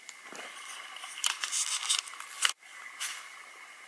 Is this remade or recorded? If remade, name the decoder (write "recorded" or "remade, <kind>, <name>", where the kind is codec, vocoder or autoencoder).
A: recorded